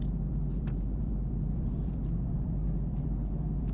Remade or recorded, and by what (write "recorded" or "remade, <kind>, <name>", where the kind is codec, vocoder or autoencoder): remade, vocoder, BigVGAN v2